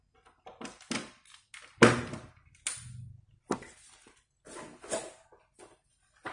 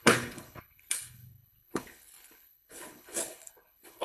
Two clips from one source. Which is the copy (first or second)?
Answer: second